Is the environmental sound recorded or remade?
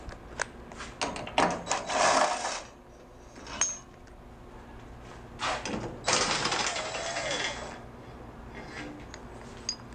recorded